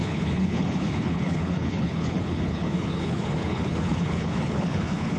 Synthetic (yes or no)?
yes